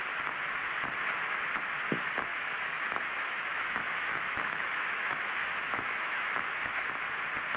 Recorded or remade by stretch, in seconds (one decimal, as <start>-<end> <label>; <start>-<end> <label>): 0.0-2.3 recorded; 2.3-6.9 remade; 6.9-7.6 recorded